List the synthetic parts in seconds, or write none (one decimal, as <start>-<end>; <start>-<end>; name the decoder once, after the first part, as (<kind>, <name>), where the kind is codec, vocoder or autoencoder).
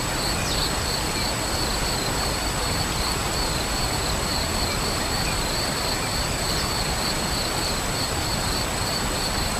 1.8-2.3 (vocoder, BigVGAN v2); 3.2-8.3